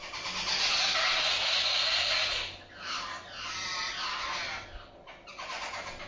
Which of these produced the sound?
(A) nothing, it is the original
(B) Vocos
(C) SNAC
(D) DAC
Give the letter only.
A